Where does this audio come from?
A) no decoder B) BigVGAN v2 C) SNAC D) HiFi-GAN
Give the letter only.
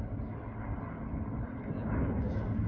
A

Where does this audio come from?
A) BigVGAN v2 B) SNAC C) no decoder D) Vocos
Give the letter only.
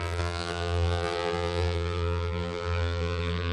A